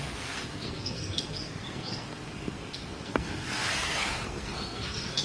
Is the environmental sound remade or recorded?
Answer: remade